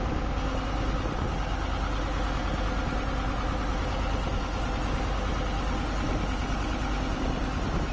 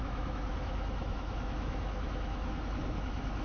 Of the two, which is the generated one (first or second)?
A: second